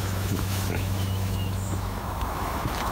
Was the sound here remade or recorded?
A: remade